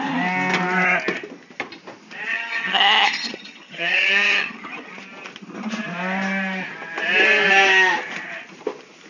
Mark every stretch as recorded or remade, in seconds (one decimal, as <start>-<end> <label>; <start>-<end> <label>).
0.0-2.3 recorded; 2.3-4.9 remade; 4.9-9.1 recorded